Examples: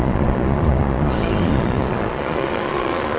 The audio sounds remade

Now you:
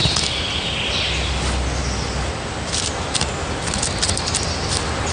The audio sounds recorded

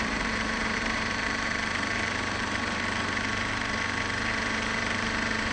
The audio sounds remade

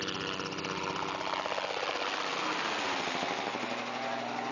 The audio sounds recorded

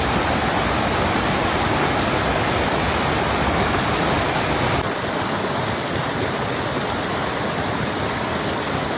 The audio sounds recorded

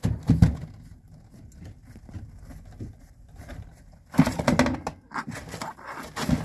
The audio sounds recorded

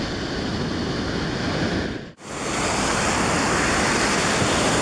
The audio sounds recorded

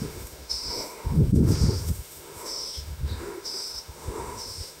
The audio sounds remade